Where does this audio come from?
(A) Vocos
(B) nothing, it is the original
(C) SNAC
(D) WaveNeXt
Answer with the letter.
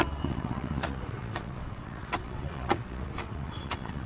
D